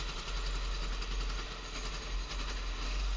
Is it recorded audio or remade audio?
recorded